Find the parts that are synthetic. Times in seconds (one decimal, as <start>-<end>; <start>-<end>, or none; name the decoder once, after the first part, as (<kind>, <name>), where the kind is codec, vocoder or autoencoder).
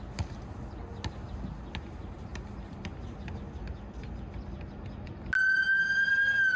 none